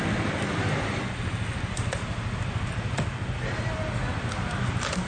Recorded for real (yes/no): yes